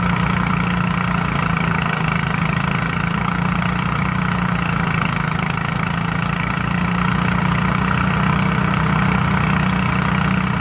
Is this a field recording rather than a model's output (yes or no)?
yes